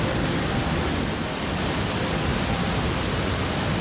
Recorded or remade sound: recorded